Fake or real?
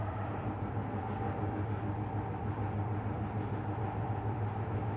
real